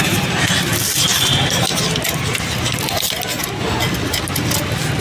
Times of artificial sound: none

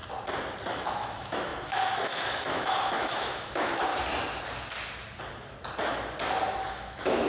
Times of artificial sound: 0.7-3.9 (autoencoder, DAC-VAE); 6.7-7.3

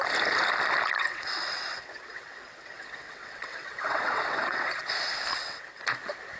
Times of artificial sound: 1.0-4.8 (vocoder, WaveNeXt); 5.3-5.8

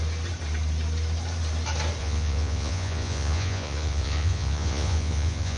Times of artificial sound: 2.0-5.6 (vocoder, Vocos)

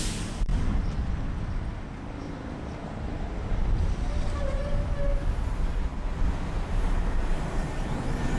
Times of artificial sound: 0.5-1.1 (vocoder, BigVGAN v2); 2.8-3.5; 7.3-8.0

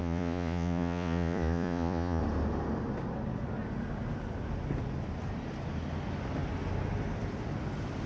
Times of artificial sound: 0.0-2.2 (vocoder, Vocos)

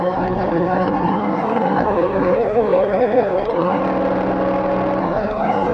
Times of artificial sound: 0.0-3.8 (codec, SNAC); 5.0-5.7